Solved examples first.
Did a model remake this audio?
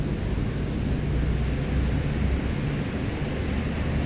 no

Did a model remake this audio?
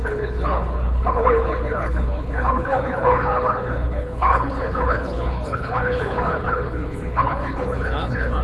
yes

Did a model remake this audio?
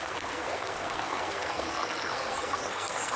yes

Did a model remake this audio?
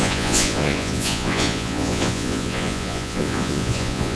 yes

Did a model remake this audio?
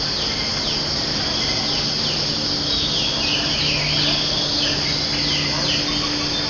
no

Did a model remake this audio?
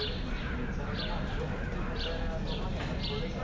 no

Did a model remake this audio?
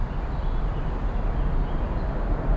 no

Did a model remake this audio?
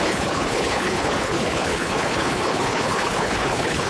yes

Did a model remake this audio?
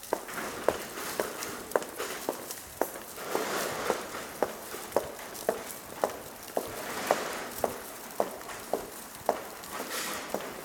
yes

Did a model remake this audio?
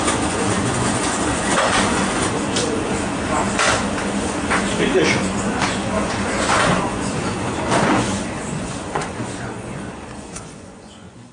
yes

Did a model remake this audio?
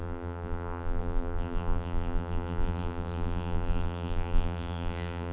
yes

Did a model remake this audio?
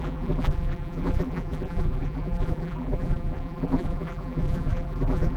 yes